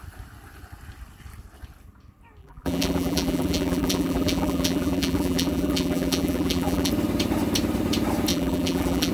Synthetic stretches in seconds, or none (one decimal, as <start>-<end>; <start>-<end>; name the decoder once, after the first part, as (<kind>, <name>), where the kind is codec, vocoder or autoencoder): 2.4-6.9 (vocoder, BigVGAN v2); 8.3-9.1